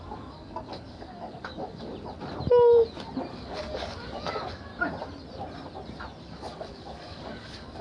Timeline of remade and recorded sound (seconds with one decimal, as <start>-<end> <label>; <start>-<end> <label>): 0.0-1.9 remade; 1.9-3.3 recorded; 3.3-4.7 remade; 4.7-6.2 recorded; 6.2-7.8 remade